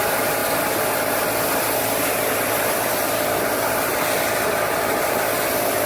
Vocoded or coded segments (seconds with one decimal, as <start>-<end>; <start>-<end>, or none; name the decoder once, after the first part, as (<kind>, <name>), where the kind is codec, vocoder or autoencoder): none

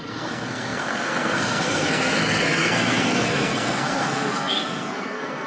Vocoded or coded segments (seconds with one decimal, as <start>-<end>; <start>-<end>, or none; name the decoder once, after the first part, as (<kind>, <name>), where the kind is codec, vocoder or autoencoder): 0.0-5.5 (codec, SNAC)

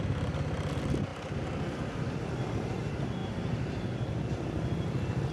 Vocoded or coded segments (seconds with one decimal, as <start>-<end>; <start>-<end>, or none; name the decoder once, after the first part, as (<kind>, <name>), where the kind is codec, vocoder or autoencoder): none

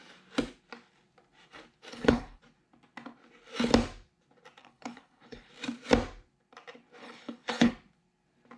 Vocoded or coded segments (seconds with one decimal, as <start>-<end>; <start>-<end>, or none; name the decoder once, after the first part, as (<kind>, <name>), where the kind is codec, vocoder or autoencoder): 1.9-2.4 (codec, HILCodec); 4.6-5.5; 7.0-7.7

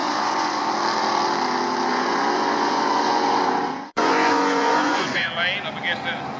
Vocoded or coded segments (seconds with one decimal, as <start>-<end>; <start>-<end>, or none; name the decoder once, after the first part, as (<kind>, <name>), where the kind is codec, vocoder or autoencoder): 0.0-0.6 (vocoder, Vocos); 1.9-5.3

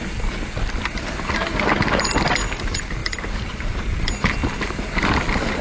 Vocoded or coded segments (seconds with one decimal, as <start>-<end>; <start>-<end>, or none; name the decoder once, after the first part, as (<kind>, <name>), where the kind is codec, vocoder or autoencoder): 3.0-4.0 (vocoder, BigVGAN v2)